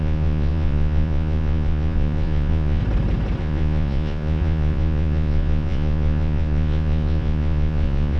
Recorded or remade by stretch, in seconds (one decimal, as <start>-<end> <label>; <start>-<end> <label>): 0.0-2.8 remade; 2.8-3.4 recorded; 3.4-8.2 remade